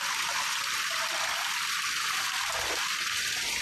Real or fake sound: real